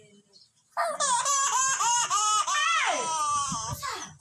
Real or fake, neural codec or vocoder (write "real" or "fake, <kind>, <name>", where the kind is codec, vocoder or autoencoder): real